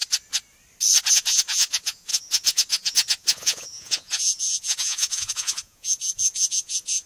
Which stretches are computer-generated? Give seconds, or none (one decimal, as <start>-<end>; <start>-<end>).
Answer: 1.1-7.1